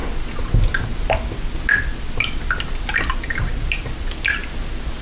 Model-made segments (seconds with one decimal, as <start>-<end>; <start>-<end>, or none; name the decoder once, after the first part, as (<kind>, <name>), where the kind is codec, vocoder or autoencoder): none